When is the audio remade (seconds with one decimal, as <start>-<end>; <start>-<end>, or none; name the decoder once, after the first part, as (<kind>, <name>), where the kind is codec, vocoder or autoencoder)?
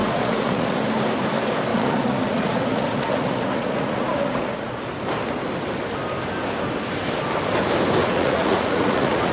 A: 0.0-0.8 (vocoder, Vocos); 1.7-4.8; 8.0-9.3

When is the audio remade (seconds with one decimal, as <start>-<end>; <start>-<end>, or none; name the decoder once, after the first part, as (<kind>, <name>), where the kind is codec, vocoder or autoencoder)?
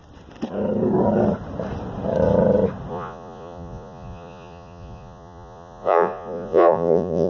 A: 2.9-7.3 (vocoder, Vocos)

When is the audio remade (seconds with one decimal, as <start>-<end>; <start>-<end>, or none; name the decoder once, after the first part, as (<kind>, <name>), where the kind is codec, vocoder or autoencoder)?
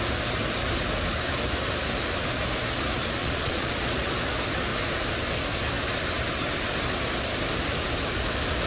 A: 3.2-3.7 (vocoder, Vocos)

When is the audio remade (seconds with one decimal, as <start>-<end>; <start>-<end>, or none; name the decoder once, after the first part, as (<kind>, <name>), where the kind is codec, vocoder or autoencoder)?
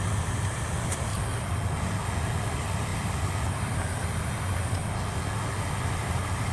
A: 0.0-1.1 (vocoder, BigVGAN v2); 2.4-4.8; 5.8-6.5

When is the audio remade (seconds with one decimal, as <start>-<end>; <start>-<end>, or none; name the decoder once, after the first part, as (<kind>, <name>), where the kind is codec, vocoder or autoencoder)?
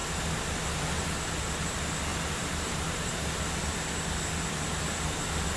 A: 2.1-3.4 (vocoder, BigVGAN v2)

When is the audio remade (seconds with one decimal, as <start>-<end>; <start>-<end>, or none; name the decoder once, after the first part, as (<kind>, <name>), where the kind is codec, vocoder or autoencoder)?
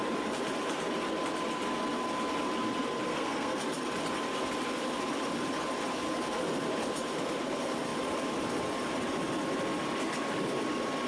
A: 3.1-3.6 (codec, SNAC)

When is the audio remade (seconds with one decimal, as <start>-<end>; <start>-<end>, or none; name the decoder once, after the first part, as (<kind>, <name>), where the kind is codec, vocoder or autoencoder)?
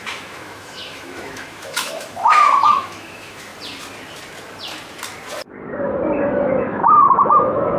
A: 0.0-3.5 (autoencoder, DAC-VAE); 6.5-7.8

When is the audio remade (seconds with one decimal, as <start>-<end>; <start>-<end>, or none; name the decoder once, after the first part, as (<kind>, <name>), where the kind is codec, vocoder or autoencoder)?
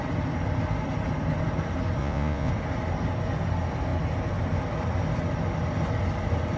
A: 2.0-2.5 (vocoder, Vocos)